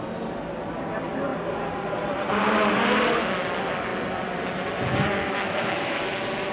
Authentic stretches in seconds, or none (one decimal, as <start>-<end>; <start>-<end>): 0.0-5.2; 6.0-6.5